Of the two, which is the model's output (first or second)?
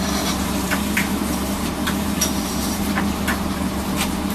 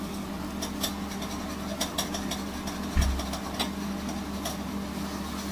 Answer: first